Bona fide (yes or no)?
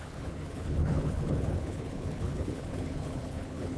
no